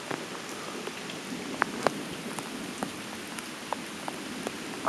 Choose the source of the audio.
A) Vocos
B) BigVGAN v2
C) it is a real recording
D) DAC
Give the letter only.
C